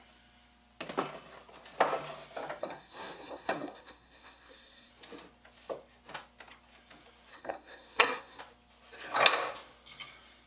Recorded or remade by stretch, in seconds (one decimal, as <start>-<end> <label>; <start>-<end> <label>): 0.0-2.6 recorded; 2.6-4.9 remade; 4.9-7.3 recorded; 7.3-8.4 remade; 8.4-10.5 recorded